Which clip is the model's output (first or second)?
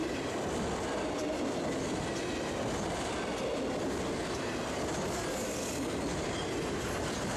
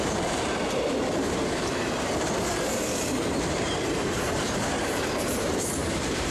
second